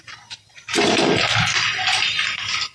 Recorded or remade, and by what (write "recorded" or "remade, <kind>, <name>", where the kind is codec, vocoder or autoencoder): recorded